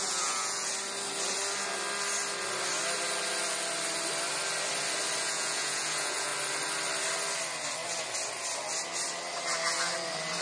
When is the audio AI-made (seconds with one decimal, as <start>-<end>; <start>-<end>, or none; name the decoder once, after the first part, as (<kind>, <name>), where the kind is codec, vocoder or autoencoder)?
0.0-0.7 (vocoder, Vocos); 5.2-6.3